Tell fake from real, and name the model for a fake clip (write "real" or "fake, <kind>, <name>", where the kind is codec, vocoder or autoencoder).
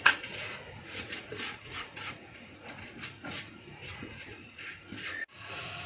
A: fake, vocoder, Vocos